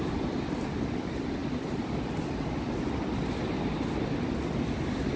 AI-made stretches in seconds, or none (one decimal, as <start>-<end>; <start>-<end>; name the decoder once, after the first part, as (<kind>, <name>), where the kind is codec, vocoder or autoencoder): none